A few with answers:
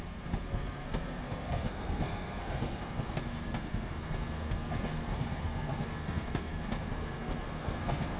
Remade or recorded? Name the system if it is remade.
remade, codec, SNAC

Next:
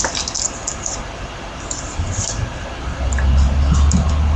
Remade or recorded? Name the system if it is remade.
recorded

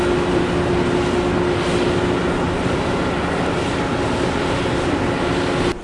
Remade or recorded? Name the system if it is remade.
recorded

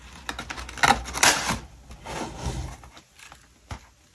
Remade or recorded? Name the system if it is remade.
recorded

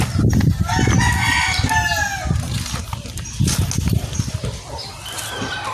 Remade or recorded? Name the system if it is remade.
recorded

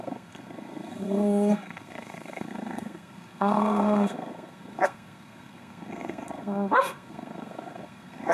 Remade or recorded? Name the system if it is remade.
remade, codec, SNAC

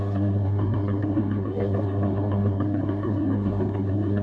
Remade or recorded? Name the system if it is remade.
remade, codec, SNAC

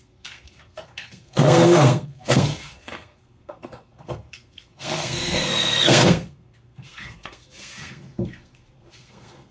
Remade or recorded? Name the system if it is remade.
remade, codec, SNAC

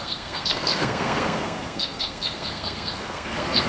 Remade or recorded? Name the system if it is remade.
remade, codec, SNAC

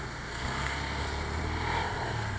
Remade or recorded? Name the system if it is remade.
remade, codec, SNAC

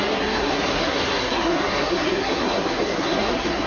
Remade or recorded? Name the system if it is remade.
remade, codec, SNAC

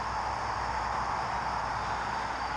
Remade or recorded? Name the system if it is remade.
recorded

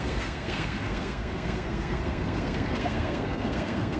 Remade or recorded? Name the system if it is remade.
remade, codec, SNAC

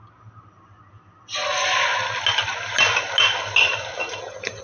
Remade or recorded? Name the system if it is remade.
recorded